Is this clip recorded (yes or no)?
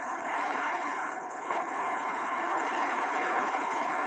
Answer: no